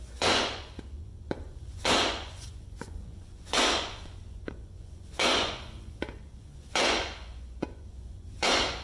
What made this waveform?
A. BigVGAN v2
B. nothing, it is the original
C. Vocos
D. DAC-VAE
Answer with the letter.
C